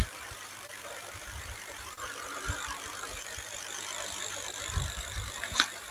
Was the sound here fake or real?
fake